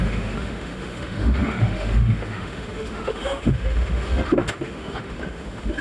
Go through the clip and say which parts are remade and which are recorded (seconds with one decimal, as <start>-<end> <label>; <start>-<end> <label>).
0.0-5.8 remade